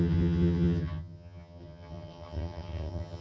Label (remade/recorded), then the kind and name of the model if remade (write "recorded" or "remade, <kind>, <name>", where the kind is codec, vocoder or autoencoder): remade, vocoder, HiFi-GAN